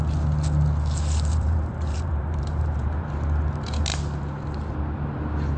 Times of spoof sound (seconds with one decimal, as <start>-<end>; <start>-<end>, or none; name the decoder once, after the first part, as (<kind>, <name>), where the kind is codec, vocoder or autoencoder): 1.3-3.0 (vocoder, BigVGAN v2)